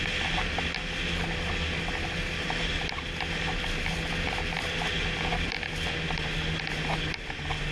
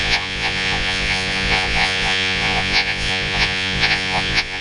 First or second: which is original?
first